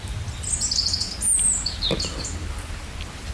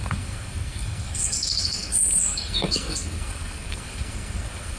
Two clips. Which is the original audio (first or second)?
first